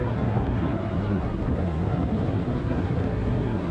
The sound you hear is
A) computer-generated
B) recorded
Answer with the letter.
A